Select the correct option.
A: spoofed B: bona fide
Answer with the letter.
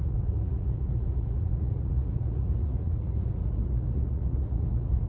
A